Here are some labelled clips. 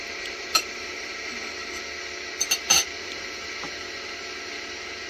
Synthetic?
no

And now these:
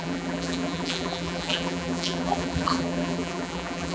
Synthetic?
yes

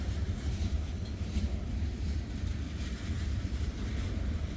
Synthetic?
yes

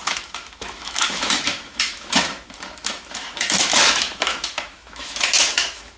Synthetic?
yes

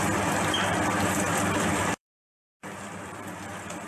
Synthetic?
yes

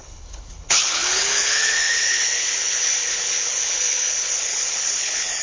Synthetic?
yes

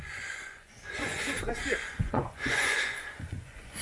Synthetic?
yes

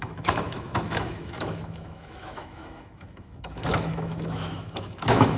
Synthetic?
yes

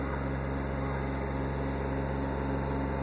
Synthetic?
no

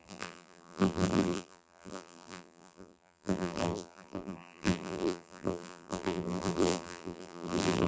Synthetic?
yes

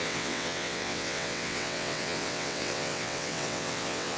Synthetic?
yes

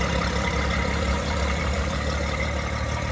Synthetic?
yes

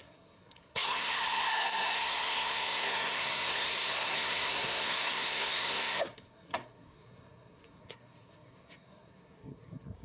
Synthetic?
yes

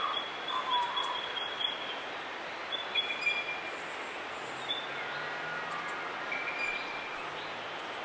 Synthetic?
no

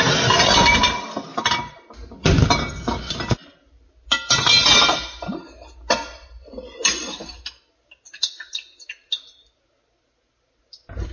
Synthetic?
no